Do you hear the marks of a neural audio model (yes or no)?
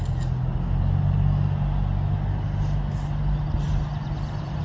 no